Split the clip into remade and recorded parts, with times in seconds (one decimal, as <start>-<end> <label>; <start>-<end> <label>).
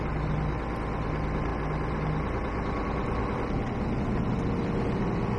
0.0-5.4 recorded